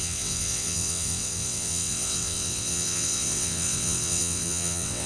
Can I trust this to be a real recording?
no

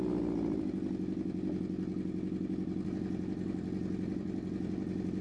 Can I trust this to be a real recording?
yes